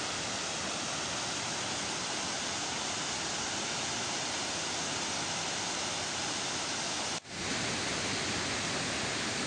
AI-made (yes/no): no